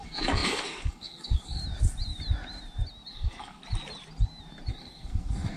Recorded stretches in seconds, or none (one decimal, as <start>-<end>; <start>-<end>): 1.6-3.1; 3.6-4.7